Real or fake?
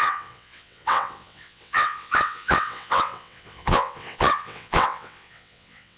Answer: fake